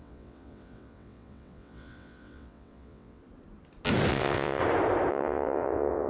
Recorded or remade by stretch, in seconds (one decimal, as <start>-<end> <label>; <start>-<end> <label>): 0.0-3.2 remade; 3.2-4.1 recorded; 4.1-4.6 remade; 4.6-5.1 recorded; 5.1-6.1 remade